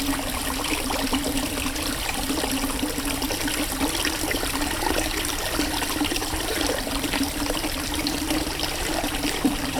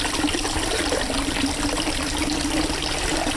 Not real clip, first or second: first